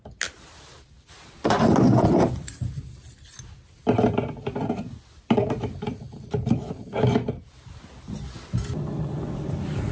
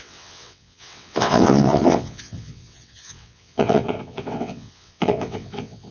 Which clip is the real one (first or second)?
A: first